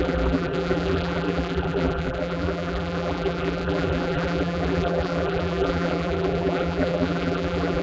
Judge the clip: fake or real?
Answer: fake